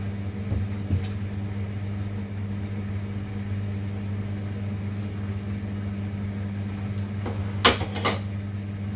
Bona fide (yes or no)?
yes